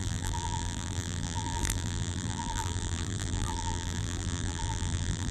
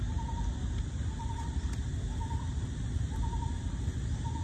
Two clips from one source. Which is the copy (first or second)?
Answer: first